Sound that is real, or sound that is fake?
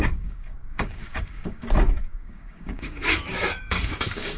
fake